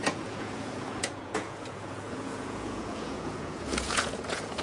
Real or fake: fake